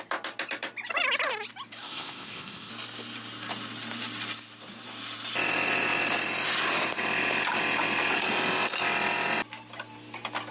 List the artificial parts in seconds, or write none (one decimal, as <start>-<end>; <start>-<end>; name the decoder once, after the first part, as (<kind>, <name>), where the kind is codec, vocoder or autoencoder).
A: 1.8-2.7 (codec, ZipCodec)